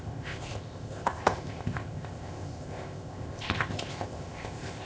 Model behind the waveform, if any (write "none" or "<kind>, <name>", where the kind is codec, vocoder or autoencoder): codec, ZipCodec